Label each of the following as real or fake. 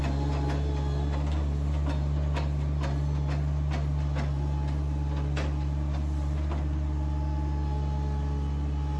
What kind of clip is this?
real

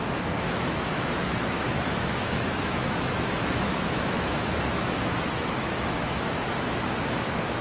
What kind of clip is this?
fake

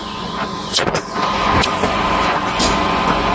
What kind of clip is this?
fake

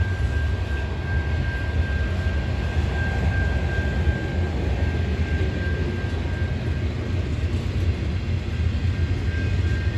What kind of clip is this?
real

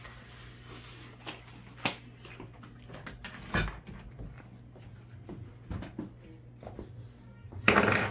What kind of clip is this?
real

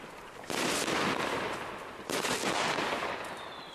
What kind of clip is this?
real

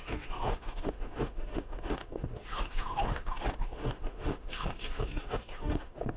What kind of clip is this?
fake